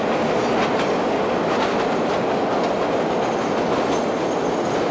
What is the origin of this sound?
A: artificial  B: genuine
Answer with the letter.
B